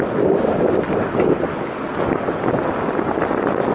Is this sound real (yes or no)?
yes